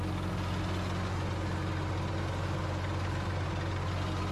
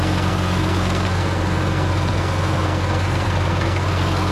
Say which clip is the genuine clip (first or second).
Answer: first